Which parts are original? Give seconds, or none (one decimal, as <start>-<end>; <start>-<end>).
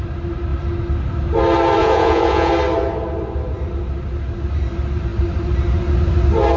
0.0-1.8; 2.5-6.6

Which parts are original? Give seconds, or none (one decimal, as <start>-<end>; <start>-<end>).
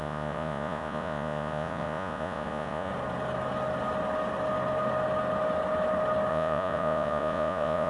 2.9-6.3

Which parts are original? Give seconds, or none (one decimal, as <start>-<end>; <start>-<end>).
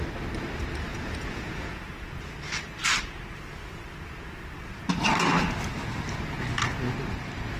0.0-0.9; 2.2-7.6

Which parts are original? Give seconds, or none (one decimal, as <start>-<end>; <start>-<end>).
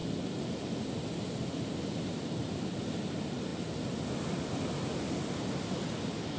0.0-6.4